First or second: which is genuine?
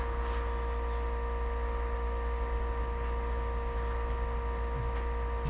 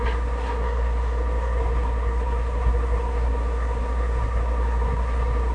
first